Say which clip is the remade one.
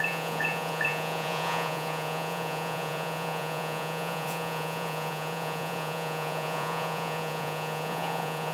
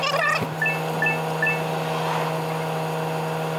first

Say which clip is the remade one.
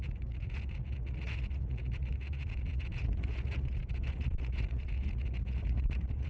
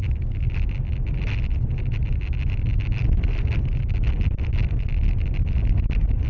first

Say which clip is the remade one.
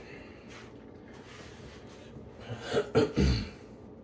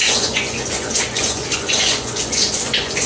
second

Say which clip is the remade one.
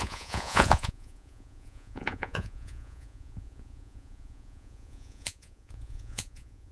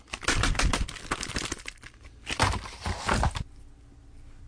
first